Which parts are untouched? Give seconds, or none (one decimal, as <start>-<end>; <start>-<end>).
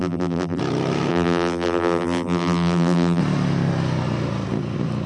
0.6-1.1; 3.2-5.1